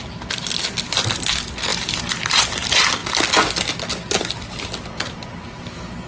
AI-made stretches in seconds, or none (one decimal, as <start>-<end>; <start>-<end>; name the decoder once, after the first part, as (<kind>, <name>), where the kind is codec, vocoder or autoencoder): none